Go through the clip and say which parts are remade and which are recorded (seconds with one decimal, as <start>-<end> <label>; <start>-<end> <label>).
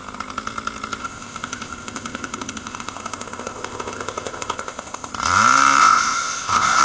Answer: 0.0-1.0 recorded; 1.0-5.1 remade; 5.1-5.8 recorded; 5.8-6.8 remade